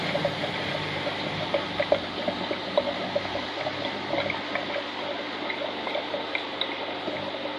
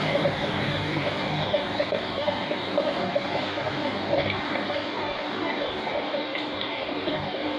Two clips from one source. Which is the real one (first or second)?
first